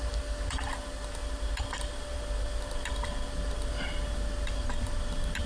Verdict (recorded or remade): recorded